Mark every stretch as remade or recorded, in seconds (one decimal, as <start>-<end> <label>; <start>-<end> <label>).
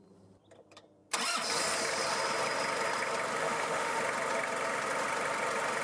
0.0-3.4 recorded; 3.4-4.0 remade; 4.0-5.8 recorded